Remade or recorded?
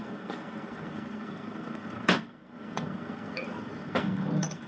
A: remade